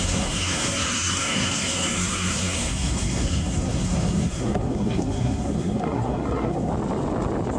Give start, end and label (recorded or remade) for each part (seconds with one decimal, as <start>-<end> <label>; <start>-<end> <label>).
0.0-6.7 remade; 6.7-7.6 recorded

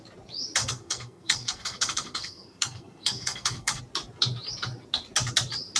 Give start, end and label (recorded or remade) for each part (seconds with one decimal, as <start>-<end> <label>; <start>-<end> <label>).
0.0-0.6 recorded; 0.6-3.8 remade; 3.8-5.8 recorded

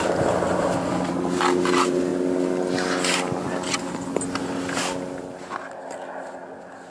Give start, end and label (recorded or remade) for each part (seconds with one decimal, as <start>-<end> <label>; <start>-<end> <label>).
0.0-6.9 recorded

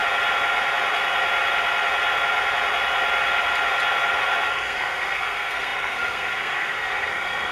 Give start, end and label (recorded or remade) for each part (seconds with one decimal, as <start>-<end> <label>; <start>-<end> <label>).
0.0-4.5 recorded; 4.5-7.5 remade

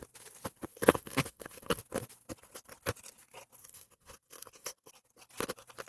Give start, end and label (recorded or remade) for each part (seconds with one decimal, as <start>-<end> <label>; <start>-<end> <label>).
0.0-0.7 recorded; 0.7-1.8 remade; 1.8-3.6 recorded; 3.6-4.9 remade; 4.9-5.9 recorded